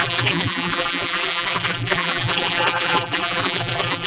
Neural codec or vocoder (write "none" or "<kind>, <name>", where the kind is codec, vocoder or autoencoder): vocoder, BigVGAN v2